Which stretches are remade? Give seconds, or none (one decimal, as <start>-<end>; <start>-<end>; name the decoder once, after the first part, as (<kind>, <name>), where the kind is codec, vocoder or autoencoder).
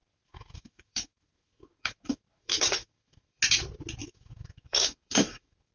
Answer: 0.0-3.4 (autoencoder, DAC-VAE); 4.0-5.7